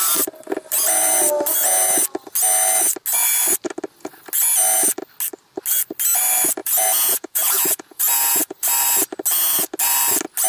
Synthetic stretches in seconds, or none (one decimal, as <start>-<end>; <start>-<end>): 6.6-8.7